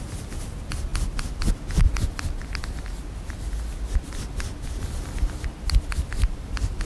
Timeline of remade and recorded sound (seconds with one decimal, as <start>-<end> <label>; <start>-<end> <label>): 0.0-6.8 recorded